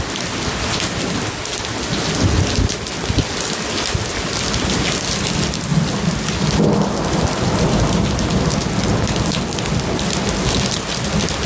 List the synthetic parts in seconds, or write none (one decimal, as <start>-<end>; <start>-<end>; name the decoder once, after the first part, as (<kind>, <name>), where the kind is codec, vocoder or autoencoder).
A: none

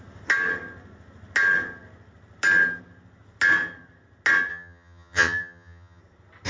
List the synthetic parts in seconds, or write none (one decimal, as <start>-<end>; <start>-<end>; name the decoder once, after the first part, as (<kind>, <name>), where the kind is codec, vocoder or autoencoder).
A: 4.5-6.0 (vocoder, HiFi-GAN)